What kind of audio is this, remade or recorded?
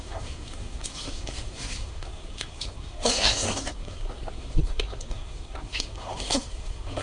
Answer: remade